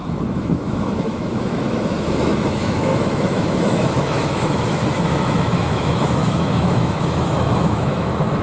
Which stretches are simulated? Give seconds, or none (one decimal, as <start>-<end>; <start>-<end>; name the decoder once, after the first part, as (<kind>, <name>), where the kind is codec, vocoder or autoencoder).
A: 0.0-8.4 (autoencoder, DAC-VAE)

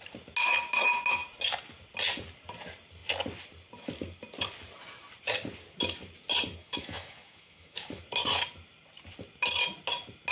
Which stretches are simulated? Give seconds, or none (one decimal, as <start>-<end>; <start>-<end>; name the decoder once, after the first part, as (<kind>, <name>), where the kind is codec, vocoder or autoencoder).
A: 6.6-8.0 (autoencoder, DAC-VAE)

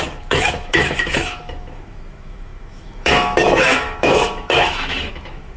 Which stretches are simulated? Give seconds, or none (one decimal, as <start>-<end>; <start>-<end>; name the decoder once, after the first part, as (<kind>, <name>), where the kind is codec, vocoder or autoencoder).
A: 0.0-5.6 (autoencoder, DAC-VAE)

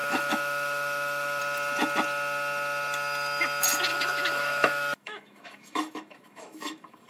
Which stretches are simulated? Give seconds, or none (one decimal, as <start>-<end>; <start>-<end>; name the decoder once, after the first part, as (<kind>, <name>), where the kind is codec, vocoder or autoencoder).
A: 0.0-1.4 (autoencoder, DAC-VAE); 3.9-7.1

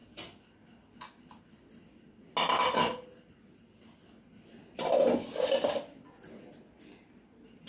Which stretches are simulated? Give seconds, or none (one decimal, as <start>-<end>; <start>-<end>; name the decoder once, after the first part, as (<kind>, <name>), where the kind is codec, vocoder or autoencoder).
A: none